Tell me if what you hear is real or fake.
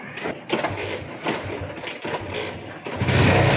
real